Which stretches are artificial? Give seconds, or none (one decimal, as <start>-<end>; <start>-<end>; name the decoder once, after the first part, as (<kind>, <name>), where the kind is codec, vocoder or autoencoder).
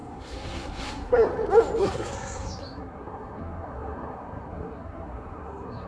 0.0-1.3 (codec, SNAC); 1.8-5.9